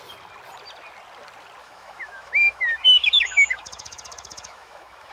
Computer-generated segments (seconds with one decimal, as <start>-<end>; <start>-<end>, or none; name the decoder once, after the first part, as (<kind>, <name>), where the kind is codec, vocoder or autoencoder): 1.6-5.1 (autoencoder, DAC-VAE)